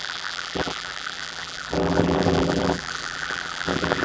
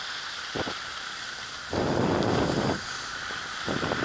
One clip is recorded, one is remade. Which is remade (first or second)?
first